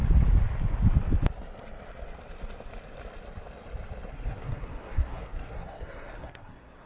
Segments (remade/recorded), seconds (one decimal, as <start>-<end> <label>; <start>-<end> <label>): 0.0-4.1 recorded; 4.1-6.9 remade